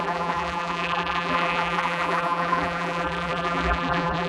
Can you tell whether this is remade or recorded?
remade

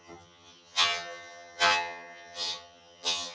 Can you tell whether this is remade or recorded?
remade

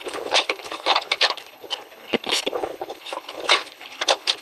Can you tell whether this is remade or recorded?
remade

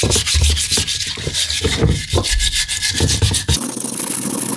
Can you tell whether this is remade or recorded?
recorded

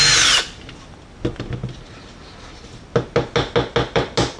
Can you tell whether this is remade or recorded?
recorded